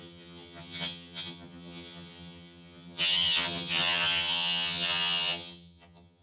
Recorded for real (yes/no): no